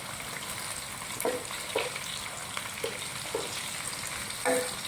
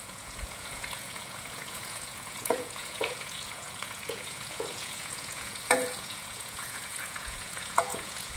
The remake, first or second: second